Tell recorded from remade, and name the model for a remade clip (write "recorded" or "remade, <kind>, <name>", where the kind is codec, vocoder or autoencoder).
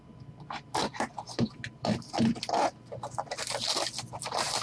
recorded